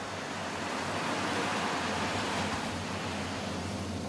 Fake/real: real